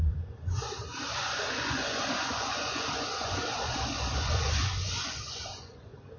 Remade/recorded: remade